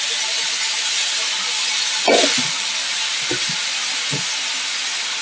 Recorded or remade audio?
recorded